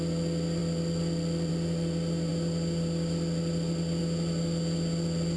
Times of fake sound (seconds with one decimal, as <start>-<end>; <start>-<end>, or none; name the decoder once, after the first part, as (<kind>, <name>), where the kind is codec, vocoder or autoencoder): none